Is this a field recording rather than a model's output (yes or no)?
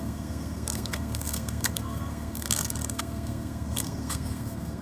no